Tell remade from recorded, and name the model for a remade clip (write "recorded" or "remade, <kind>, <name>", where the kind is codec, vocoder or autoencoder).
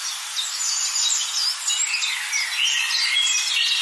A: recorded